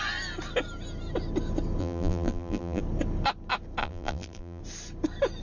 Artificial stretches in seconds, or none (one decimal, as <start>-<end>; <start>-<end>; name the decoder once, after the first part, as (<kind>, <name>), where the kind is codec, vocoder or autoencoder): 1.8-2.8 (vocoder, BigVGAN v2); 3.8-4.6